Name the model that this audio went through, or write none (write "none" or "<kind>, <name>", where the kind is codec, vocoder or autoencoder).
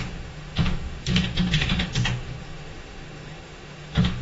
autoencoder, DAC-VAE